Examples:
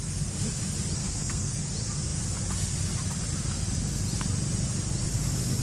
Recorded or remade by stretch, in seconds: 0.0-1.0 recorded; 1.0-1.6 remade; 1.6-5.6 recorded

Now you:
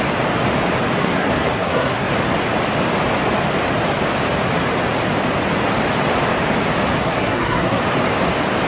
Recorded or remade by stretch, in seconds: 0.0-1.0 recorded; 1.0-2.1 remade; 2.1-7.0 recorded; 7.0-7.8 remade; 7.8-8.7 recorded